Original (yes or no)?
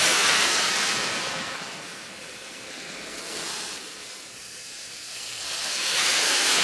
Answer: no